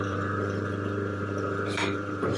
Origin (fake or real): fake